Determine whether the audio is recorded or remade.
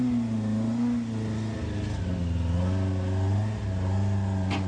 recorded